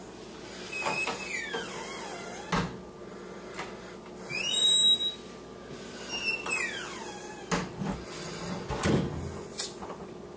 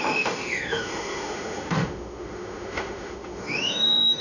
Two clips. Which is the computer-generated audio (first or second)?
second